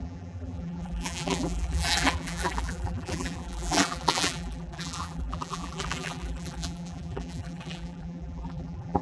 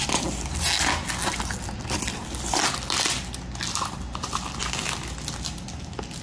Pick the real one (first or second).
second